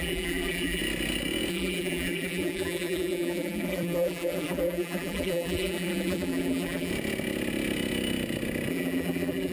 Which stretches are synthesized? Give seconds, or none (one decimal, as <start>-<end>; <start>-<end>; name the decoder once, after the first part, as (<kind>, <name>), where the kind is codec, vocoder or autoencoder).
0.0-0.8 (vocoder, BigVGAN v2); 1.5-6.9; 8.7-9.5